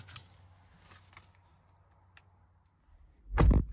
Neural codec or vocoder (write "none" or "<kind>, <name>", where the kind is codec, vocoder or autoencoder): none